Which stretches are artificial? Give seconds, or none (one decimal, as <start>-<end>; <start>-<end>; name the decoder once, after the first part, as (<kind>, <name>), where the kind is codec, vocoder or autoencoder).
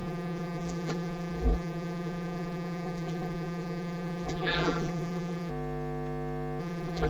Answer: 0.0-5.5 (vocoder, BigVGAN v2); 6.6-7.1